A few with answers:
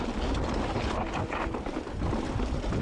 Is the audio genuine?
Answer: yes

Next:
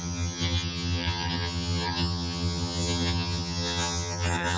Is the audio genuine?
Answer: no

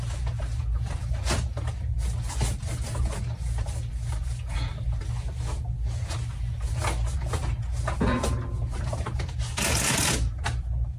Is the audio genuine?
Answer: yes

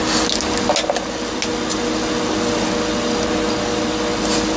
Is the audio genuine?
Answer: yes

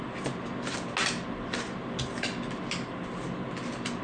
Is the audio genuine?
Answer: yes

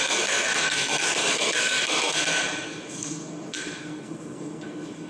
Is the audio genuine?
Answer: no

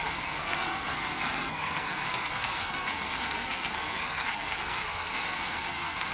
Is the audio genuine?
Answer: no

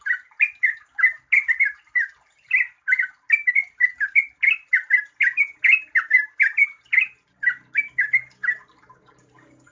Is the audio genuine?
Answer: yes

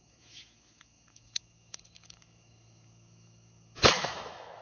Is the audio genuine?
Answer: no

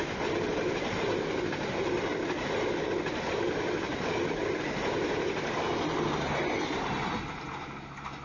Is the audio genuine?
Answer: yes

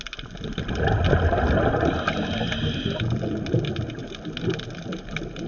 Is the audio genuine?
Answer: yes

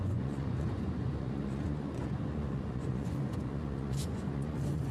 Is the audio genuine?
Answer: no